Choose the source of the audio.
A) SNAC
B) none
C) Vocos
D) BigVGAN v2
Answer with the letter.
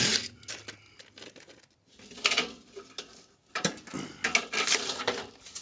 B